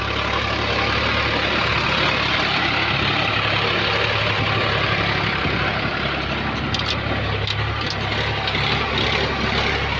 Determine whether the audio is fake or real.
real